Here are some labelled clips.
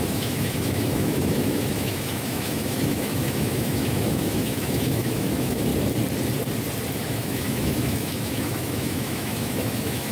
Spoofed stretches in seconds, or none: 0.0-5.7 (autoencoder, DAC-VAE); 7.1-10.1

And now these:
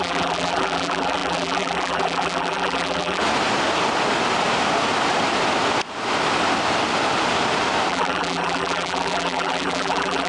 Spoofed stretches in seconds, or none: 0.0-3.2 (vocoder, BigVGAN v2); 7.9-10.3

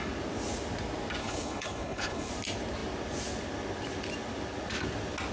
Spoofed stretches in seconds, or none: 1.2-2.3 (codec, HILCodec)

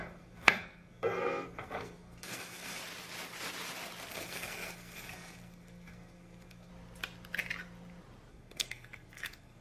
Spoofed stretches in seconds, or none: 0.0-2.8 (codec, SNAC); 4.1-6.7; 8.3-9.6

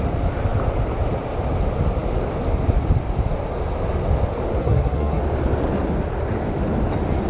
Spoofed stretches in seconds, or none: 4.6-5.2 (codec, SNAC)